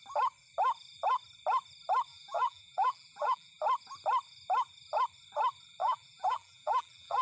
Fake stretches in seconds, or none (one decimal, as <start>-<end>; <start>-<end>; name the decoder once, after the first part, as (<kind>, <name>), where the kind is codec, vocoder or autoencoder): 2.1-3.6 (vocoder, BigVGAN v2); 5.8-7.2